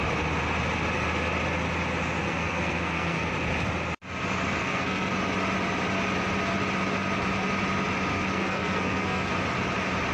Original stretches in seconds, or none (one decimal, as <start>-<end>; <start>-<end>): 0.0-2.2; 3.3-4.6; 5.1-8.1; 9.3-10.1